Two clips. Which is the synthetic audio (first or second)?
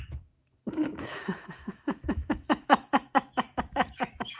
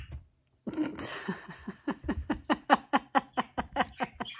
first